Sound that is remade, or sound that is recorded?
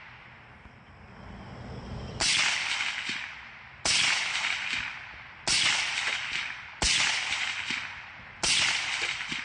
recorded